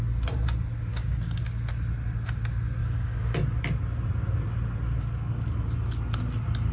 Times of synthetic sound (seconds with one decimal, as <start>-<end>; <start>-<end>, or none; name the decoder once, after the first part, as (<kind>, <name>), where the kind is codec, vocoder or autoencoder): 0.9-1.4 (codec, DAC); 2.8-3.6